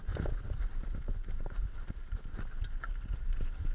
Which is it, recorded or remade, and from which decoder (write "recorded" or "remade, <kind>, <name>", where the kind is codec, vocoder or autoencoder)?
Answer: recorded